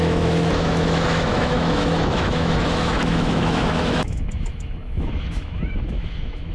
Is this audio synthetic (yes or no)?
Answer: yes